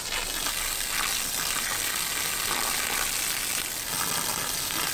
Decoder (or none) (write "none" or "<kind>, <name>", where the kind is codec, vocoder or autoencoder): none